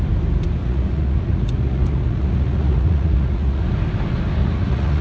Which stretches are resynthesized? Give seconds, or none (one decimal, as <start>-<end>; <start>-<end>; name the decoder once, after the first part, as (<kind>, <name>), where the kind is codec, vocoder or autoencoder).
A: 0.6-3.6 (vocoder, Vocos); 4.4-5.0